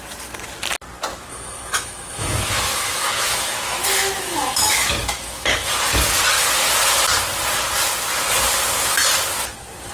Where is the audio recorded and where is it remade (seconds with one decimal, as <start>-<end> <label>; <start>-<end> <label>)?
0.0-1.1 recorded; 1.1-5.7 remade; 5.7-9.9 recorded